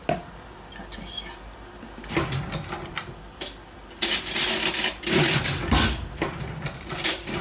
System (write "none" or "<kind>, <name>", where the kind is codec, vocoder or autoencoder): none